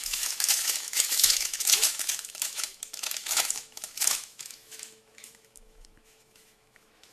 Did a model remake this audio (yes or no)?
yes